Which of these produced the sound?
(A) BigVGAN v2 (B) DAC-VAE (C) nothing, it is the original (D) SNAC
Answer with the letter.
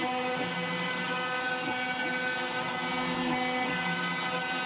C